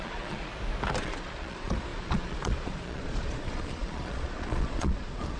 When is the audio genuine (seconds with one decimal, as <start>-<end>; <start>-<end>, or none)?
0.5-1.0